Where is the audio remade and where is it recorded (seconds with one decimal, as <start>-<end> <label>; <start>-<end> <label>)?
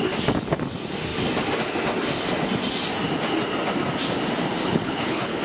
0.0-4.6 recorded; 4.6-5.4 remade